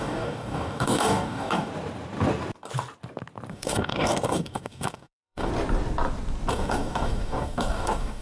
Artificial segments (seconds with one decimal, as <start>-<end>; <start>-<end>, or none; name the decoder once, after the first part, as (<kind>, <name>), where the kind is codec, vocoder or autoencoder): 0.0-1.7 (codec, DAC); 3.5-5.5; 6.5-8.2